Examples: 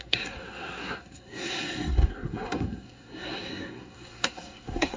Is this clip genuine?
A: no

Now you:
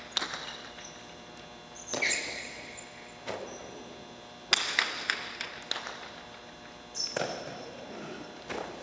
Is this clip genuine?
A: yes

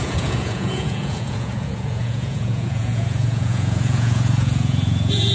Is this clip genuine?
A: no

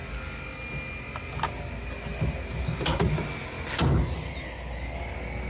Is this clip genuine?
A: yes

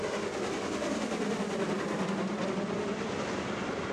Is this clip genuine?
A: yes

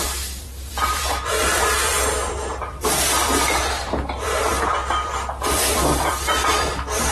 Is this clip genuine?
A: no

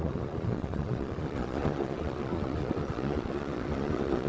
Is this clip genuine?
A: no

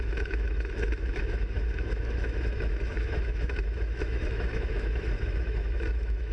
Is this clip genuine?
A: no